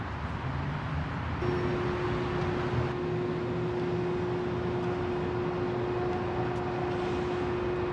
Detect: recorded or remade recorded